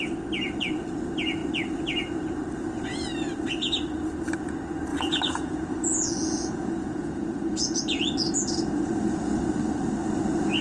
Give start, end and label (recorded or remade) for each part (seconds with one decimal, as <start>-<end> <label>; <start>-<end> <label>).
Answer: 0.0-4.9 recorded; 4.9-7.8 remade; 7.8-10.6 recorded